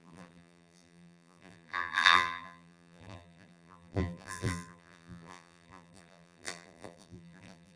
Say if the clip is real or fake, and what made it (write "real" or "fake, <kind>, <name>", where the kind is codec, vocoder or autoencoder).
fake, vocoder, BigVGAN v2